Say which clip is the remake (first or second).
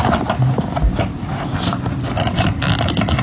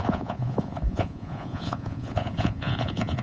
second